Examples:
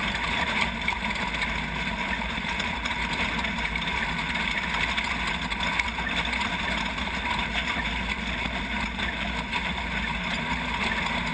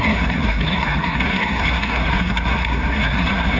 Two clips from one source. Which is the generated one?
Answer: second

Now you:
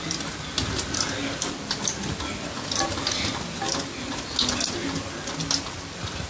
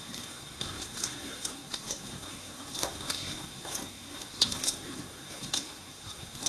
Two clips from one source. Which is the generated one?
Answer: second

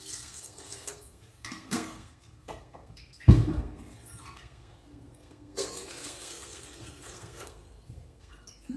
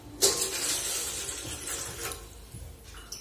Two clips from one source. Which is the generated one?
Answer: first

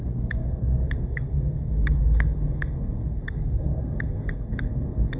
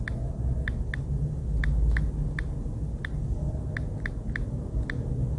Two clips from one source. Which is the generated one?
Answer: first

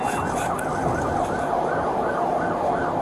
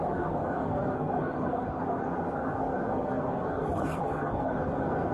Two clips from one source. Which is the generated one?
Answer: second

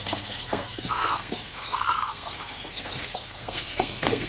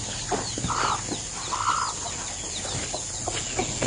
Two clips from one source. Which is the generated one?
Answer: first